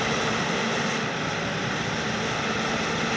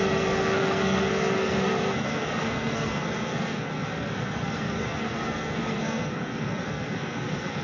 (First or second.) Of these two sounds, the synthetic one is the second